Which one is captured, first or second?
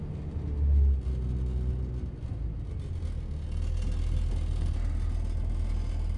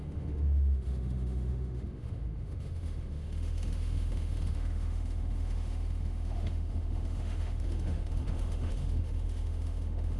first